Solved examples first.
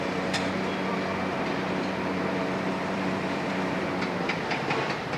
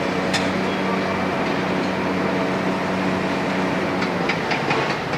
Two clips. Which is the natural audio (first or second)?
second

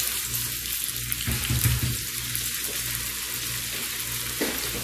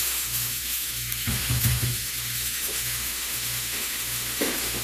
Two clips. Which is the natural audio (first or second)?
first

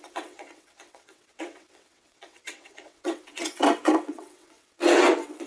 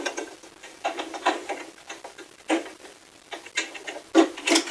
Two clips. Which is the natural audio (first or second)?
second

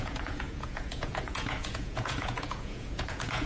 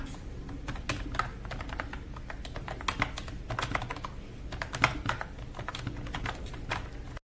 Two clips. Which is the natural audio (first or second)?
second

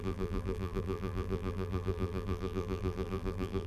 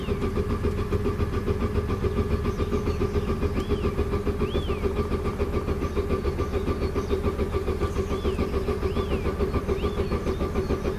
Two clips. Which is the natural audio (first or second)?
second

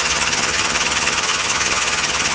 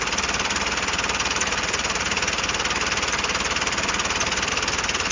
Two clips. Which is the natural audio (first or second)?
second